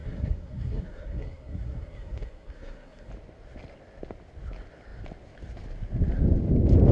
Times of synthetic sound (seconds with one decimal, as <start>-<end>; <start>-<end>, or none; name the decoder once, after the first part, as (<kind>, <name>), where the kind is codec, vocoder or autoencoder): 0.0-3.1 (codec, SNAC)